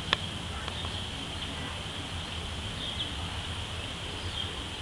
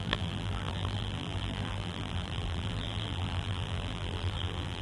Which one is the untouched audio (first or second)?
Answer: first